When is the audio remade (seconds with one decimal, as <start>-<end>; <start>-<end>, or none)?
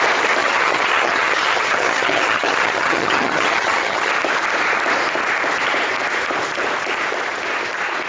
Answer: 0.4-4.1